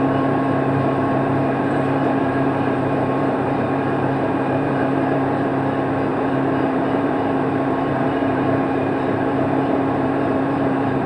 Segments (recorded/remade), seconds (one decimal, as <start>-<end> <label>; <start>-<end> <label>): 0.0-5.5 remade; 5.5-6.1 recorded; 6.1-11.1 remade